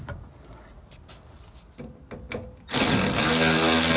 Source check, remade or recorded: recorded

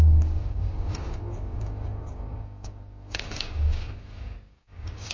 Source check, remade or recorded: remade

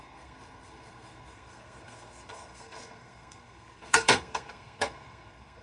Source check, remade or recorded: remade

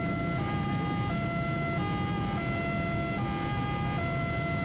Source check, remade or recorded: recorded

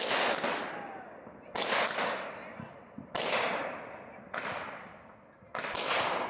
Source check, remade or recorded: remade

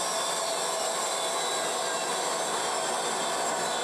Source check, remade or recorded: recorded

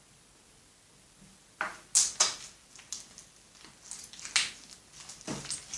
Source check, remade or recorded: recorded